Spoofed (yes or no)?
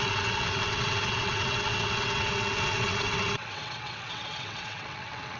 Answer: yes